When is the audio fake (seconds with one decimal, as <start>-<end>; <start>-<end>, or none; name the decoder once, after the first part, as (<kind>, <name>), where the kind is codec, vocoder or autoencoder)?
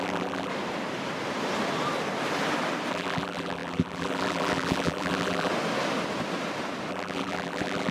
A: 0.0-0.5 (vocoder, BigVGAN v2); 2.9-5.5; 6.9-7.9